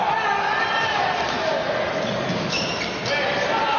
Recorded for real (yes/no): yes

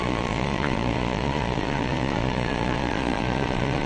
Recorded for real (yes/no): no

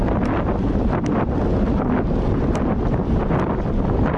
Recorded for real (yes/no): yes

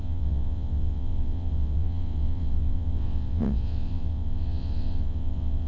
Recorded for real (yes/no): no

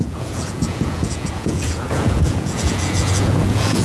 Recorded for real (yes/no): no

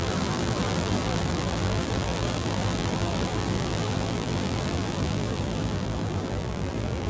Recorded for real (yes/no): no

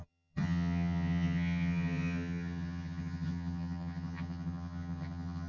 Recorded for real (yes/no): no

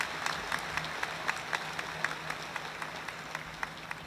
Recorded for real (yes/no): yes